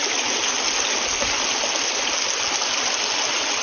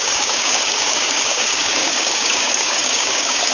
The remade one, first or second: second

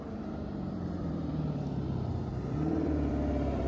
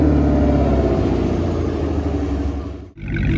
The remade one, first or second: first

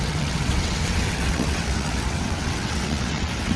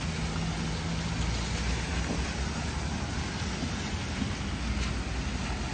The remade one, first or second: first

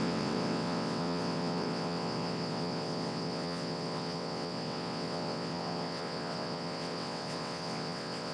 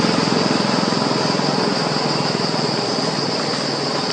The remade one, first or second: first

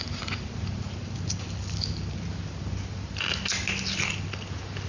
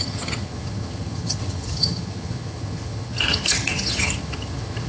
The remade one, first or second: second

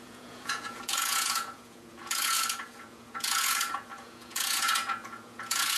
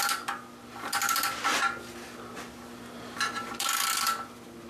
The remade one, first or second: first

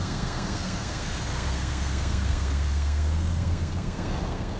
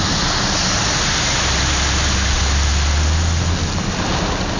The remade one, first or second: first